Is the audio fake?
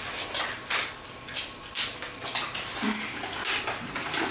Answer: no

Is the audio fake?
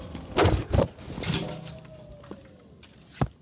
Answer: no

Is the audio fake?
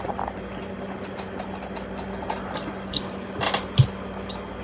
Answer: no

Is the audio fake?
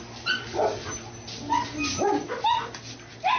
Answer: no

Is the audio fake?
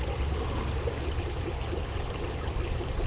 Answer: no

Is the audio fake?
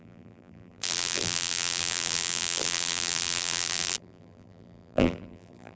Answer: yes